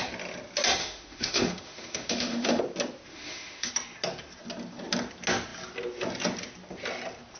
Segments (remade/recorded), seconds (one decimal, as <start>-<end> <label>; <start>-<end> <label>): 0.0-0.8 recorded; 0.8-2.6 remade; 2.6-3.1 recorded; 3.1-3.7 remade; 3.7-7.4 recorded